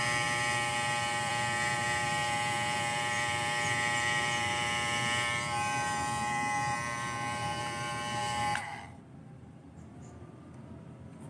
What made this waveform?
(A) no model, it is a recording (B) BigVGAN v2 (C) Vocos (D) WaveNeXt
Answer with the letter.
B